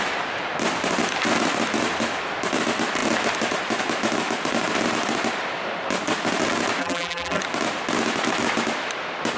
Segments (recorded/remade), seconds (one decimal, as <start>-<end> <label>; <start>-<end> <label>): 0.0-6.8 recorded; 6.8-7.4 remade; 7.4-9.4 recorded

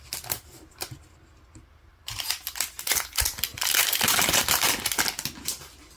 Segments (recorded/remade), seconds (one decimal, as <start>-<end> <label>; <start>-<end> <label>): 0.0-1.9 recorded; 1.9-2.4 remade; 2.4-3.5 recorded; 3.5-4.8 remade; 4.8-6.0 recorded